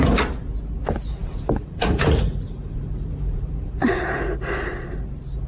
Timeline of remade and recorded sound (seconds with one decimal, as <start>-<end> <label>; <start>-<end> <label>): 0.0-1.2 recorded; 1.2-4.0 remade; 4.0-5.5 recorded